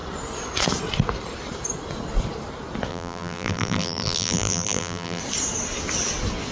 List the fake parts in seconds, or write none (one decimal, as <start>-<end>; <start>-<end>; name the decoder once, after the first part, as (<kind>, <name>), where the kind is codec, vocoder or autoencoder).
2.9-5.2 (vocoder, BigVGAN v2)